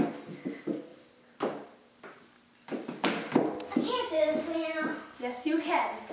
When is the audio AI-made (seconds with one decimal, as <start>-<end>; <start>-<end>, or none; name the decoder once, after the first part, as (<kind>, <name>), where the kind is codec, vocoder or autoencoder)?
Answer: 0.9-2.0 (vocoder, BigVGAN v2)